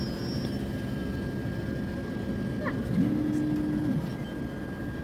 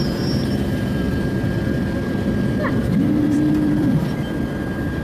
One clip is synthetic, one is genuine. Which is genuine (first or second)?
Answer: first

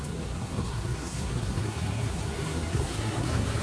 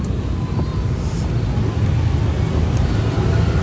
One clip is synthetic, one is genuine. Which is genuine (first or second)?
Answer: second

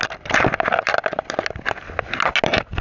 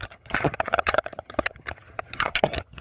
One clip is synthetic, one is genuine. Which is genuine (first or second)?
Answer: first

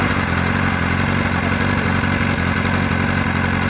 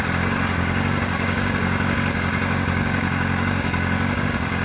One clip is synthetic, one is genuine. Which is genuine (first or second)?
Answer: first